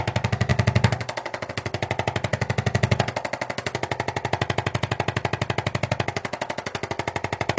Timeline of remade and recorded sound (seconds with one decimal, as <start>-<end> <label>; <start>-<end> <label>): 0.0-7.6 recorded